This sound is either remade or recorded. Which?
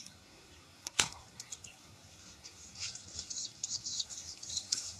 remade